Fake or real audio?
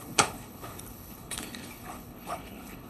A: fake